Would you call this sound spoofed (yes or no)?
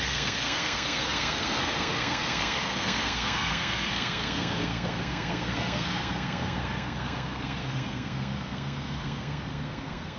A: yes